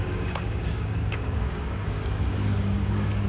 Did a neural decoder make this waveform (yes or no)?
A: yes